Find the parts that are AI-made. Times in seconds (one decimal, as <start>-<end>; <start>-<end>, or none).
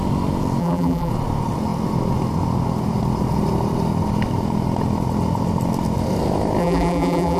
0.6-1.1; 6.6-7.4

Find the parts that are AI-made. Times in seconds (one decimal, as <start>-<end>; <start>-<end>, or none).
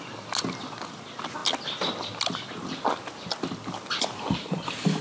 none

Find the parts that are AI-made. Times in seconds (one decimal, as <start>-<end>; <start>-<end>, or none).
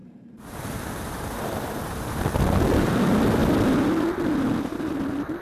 0.0-2.2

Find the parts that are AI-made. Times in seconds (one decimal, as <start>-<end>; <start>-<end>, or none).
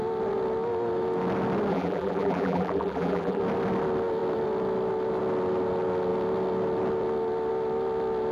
1.7-3.4